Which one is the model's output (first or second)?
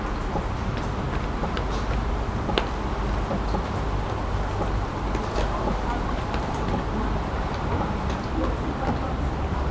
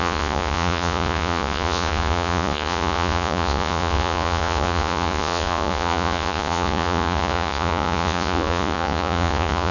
second